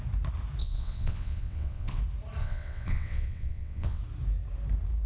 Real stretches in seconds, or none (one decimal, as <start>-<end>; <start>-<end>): 0.0-0.6; 2.0-2.4; 4.0-5.1

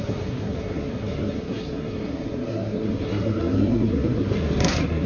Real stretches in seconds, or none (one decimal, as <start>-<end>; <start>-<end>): none

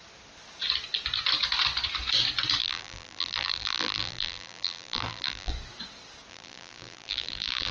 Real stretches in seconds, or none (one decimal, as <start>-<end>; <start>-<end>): 0.0-2.6; 5.5-6.3

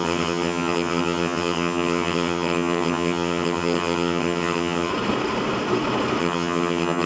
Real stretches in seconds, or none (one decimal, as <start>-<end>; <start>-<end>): 4.9-6.2